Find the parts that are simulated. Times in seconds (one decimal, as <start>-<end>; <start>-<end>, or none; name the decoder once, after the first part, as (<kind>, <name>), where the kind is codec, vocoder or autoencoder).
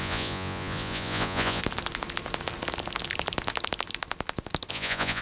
0.0-1.6 (vocoder, Vocos); 4.7-5.2